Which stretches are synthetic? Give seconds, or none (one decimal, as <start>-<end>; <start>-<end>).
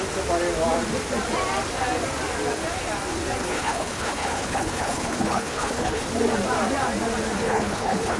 3.4-6.0; 7.4-8.2